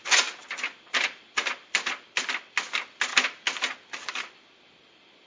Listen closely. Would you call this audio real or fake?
real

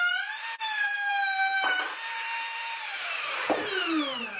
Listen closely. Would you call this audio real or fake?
fake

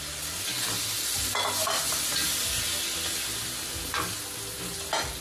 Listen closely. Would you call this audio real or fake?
real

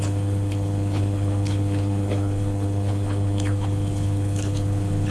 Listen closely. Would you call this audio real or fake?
fake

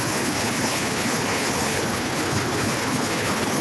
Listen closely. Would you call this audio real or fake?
fake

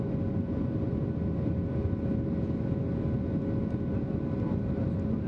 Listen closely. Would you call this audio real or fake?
real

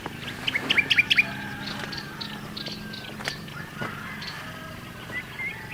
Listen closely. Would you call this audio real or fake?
real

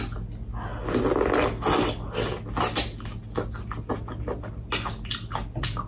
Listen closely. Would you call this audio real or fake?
real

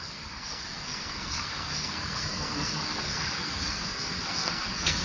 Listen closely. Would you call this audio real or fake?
fake